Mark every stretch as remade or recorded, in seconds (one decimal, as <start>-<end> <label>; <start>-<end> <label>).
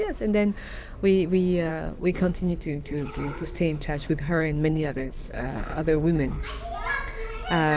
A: 0.0-1.7 recorded; 1.7-6.4 remade; 6.4-7.8 recorded